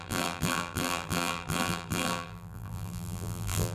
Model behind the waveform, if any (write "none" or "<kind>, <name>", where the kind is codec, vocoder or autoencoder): vocoder, BigVGAN v2